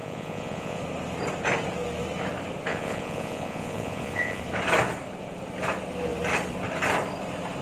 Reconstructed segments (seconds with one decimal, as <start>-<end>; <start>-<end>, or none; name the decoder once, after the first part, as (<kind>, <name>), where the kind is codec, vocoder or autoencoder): 0.0-0.8 (vocoder, Vocos); 2.7-4.4